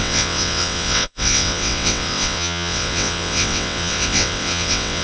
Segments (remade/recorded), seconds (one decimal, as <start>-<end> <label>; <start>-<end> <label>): 0.0-5.0 remade